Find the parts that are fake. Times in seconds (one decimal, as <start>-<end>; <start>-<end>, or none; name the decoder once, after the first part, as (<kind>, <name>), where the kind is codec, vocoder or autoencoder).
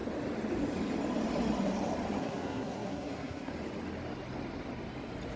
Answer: 2.2-3.5 (codec, SNAC)